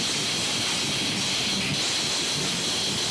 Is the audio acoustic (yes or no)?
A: yes